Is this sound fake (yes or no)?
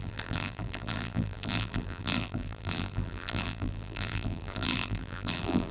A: yes